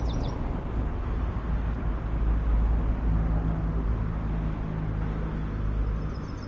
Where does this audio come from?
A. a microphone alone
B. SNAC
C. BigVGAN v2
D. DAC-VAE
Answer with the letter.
A